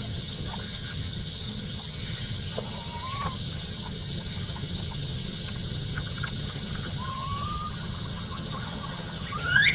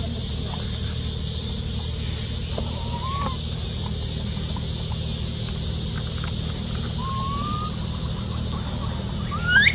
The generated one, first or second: first